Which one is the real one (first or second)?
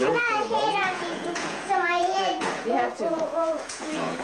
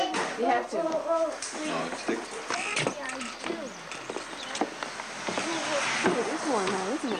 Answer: second